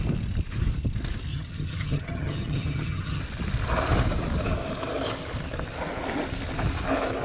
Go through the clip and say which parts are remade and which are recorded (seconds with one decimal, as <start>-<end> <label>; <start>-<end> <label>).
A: 0.0-1.3 recorded; 1.3-3.2 remade; 3.2-7.2 recorded